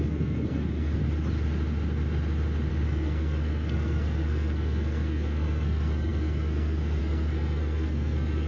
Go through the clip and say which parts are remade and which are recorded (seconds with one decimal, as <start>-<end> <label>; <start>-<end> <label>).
0.0-1.0 remade; 1.0-2.7 recorded; 2.7-8.5 remade